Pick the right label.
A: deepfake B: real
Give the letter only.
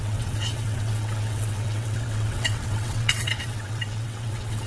A